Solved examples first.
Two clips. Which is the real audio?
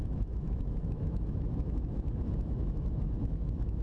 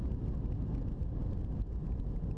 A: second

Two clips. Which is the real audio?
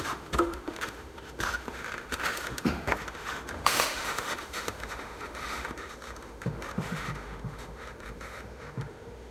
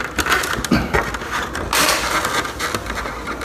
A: second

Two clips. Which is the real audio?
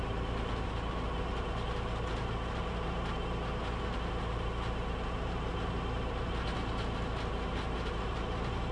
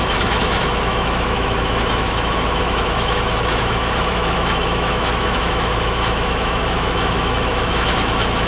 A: first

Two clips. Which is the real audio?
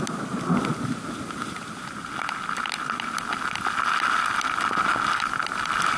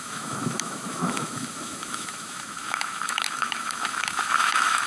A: first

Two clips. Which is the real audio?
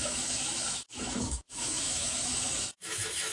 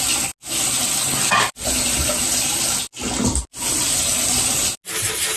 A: second